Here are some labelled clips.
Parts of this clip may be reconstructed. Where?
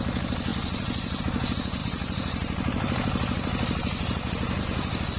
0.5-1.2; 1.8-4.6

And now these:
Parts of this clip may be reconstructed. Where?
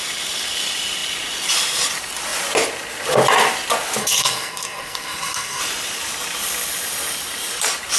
4.0-5.6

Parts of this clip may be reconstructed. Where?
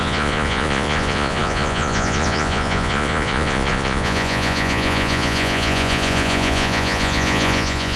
0.0-8.0